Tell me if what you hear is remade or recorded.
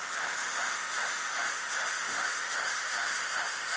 remade